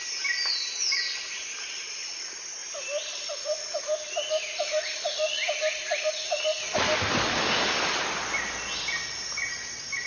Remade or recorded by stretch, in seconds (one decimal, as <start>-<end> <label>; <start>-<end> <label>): 0.0-2.6 recorded; 2.6-6.1 remade; 6.1-10.1 recorded